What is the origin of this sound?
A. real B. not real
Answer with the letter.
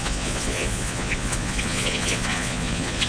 B